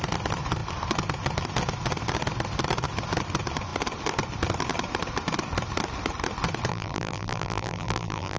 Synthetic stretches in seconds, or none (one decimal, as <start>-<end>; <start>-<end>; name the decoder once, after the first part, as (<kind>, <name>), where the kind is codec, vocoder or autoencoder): 6.7-8.4 (vocoder, BigVGAN v2)

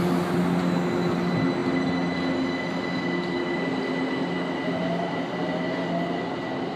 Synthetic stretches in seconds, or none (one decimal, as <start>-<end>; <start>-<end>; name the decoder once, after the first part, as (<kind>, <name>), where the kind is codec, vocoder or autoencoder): none

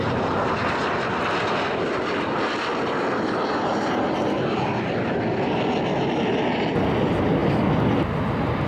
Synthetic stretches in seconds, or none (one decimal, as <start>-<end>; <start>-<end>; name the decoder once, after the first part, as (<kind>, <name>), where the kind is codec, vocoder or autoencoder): none

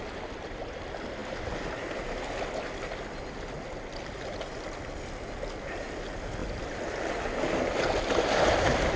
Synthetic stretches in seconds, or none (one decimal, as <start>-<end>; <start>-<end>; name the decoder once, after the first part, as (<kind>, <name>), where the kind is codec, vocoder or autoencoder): none

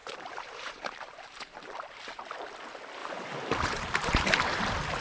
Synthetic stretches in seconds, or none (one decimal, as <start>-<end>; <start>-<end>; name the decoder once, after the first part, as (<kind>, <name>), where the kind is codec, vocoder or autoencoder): 0.0-2.3 (vocoder, BigVGAN v2); 3.0-4.4

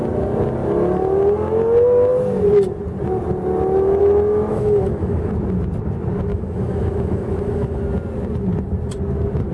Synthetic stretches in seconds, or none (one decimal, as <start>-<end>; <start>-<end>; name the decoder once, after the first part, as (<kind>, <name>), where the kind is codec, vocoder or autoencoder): 4.5-5.3 (autoencoder, DAC-VAE); 6.3-7.8